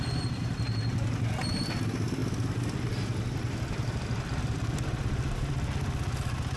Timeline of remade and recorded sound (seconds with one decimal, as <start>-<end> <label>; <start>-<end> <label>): 0.0-6.6 recorded